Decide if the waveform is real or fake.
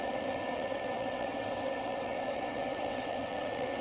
fake